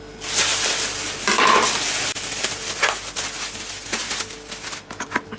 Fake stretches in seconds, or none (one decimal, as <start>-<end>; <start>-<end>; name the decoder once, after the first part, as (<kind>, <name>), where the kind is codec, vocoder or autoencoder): none